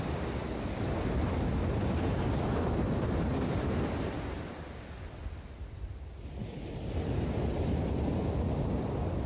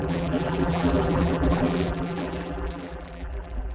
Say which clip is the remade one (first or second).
second